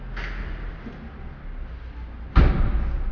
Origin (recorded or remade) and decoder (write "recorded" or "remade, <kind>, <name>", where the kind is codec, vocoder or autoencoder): recorded